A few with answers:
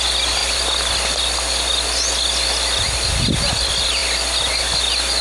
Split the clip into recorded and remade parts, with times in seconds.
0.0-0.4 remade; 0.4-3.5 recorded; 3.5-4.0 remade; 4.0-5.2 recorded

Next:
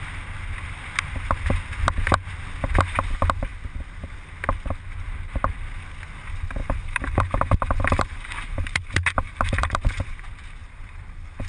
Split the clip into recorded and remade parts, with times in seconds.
0.0-6.6 recorded; 6.6-10.1 remade; 10.1-10.6 recorded; 10.6-11.5 remade

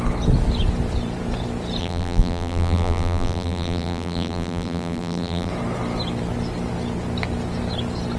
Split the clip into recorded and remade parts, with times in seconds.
0.0-1.8 recorded; 1.8-5.5 remade; 5.5-8.2 recorded

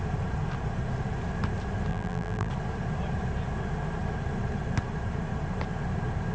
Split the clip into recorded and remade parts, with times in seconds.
0.0-1.9 recorded; 1.9-2.5 remade; 2.5-6.3 recorded